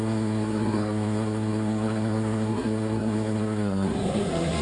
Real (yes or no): no